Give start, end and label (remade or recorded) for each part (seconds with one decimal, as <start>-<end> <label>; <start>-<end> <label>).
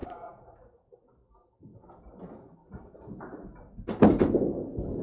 0.0-1.1 remade; 1.1-5.0 recorded